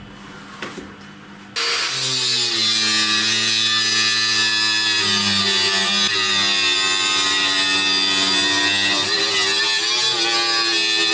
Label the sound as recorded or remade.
recorded